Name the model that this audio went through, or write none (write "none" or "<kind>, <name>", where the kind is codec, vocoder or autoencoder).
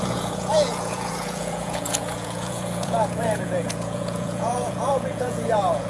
vocoder, Vocos